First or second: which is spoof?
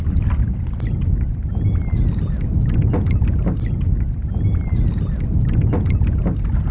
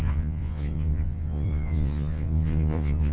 second